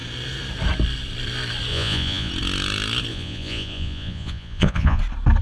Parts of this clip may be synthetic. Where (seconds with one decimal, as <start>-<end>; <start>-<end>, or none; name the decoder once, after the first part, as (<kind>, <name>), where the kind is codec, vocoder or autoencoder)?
1.7-2.3 (vocoder, Vocos); 3.1-5.0